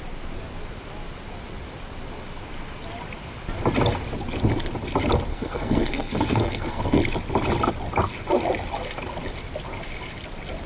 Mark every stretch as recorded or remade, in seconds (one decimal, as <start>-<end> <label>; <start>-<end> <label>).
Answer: 0.0-5.3 recorded; 5.3-7.0 remade; 7.0-10.7 recorded

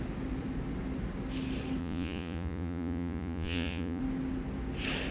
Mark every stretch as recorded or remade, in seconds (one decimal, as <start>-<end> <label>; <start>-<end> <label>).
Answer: 0.0-1.8 recorded; 1.8-4.0 remade; 4.0-5.1 recorded

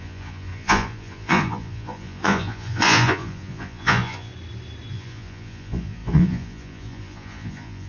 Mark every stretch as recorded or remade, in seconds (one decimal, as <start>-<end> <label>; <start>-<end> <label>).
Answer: 0.0-4.3 remade; 4.3-4.9 recorded; 4.9-7.9 remade